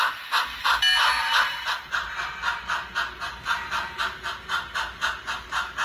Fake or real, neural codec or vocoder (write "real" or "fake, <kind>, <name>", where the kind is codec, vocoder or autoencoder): real